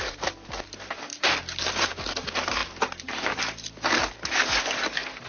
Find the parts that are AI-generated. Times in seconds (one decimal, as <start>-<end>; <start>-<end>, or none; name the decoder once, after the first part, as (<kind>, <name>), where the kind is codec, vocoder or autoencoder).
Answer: none